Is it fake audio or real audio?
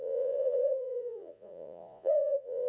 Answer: fake